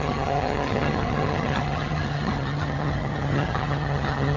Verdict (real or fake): fake